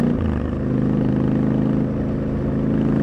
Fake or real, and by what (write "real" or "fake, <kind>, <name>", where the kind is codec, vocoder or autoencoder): real